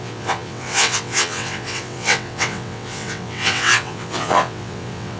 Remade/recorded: remade